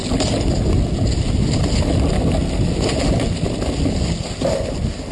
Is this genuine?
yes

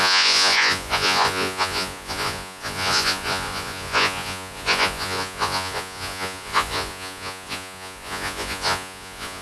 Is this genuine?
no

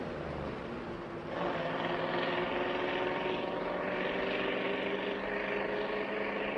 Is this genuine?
yes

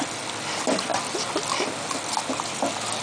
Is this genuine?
yes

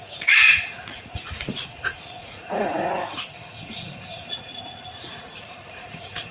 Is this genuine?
no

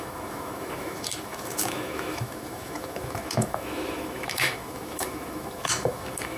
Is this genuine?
no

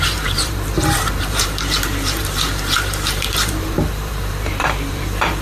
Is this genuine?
no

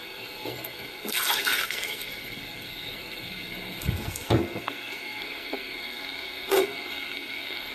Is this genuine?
no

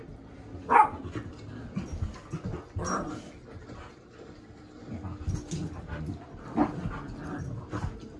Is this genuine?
yes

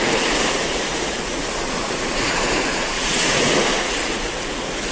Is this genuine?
no